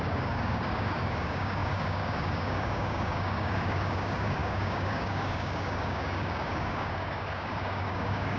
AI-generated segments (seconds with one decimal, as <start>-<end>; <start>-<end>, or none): 0.0-8.4